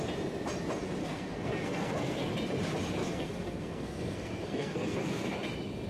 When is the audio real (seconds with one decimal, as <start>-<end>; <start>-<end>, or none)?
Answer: 0.0-1.0; 2.3-3.0; 5.3-5.9